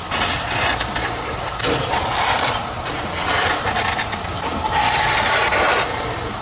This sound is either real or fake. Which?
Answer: real